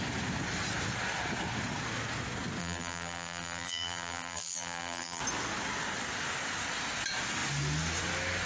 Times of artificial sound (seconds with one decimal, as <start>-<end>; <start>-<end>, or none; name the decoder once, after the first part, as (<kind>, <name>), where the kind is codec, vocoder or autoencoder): 2.6-5.2 (vocoder, BigVGAN v2)